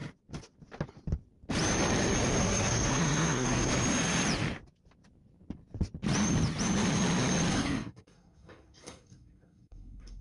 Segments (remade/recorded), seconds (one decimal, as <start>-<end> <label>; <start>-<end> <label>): 0.0-2.4 recorded; 2.4-3.7 remade; 3.7-7.5 recorded; 7.5-10.2 remade